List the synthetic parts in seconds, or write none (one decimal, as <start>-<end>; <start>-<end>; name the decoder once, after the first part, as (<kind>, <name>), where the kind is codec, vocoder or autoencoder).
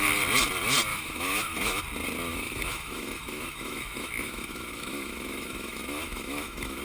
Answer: 0.9-1.8 (autoencoder, DAC-VAE); 2.3-6.8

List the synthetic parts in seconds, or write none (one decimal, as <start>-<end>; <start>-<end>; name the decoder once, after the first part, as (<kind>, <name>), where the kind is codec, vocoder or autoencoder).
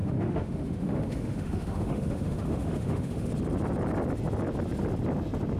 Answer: 0.0-3.3 (autoencoder, DAC-VAE)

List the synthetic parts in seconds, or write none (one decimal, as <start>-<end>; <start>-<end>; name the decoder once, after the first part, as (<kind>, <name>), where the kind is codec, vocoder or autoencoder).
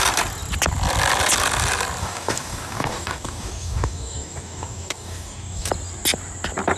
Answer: 2.0-5.7 (codec, DAC)